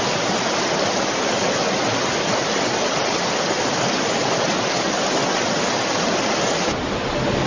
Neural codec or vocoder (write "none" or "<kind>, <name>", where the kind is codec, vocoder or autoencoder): none